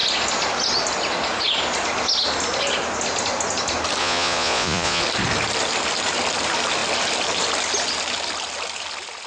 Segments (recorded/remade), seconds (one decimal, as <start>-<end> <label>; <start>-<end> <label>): 0.0-4.0 recorded; 4.0-5.0 remade; 5.0-9.3 recorded